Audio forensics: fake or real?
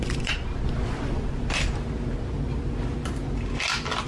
real